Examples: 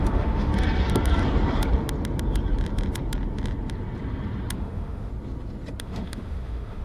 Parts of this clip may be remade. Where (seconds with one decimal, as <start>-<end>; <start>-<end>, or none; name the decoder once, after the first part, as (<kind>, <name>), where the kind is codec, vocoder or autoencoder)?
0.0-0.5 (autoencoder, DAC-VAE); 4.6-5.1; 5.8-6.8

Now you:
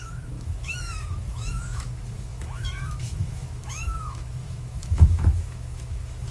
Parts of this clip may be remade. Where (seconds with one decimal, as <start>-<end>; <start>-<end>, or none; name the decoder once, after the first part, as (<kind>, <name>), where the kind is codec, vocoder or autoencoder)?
0.0-6.3 (autoencoder, DAC-VAE)

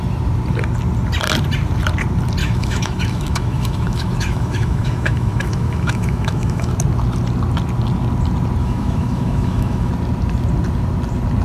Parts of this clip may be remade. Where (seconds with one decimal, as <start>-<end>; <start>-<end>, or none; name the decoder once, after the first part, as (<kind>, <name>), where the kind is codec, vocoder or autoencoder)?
2.4-6.7 (autoencoder, DAC-VAE); 8.6-9.9

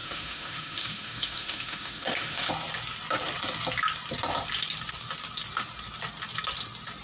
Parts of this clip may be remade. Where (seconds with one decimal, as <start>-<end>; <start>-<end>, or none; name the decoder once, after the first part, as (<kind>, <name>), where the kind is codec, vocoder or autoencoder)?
0.0-2.5 (autoencoder, DAC-VAE)

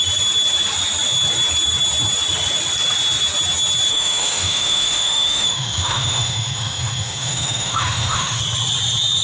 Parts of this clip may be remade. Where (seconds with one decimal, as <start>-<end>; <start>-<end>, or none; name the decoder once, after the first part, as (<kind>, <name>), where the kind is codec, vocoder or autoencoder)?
3.9-8.4 (autoencoder, DAC-VAE)

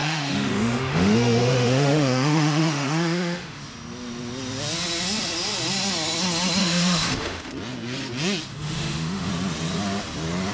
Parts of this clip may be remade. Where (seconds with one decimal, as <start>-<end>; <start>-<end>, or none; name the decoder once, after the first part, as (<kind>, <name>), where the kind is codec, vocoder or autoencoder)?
0.0-3.6 (autoencoder, DAC-VAE); 6.6-7.5; 8.5-9.3

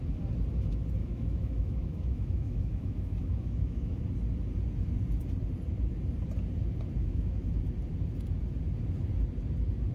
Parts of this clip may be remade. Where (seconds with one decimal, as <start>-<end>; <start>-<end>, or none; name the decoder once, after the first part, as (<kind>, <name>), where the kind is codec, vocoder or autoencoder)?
1.0-4.0 (autoencoder, DAC-VAE); 7.0-7.6

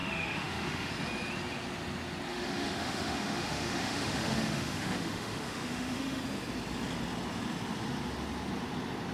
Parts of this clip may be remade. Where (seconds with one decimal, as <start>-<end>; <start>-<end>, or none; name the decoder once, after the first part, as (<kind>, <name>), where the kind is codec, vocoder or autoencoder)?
0.0-0.9 (autoencoder, DAC-VAE); 2.3-6.2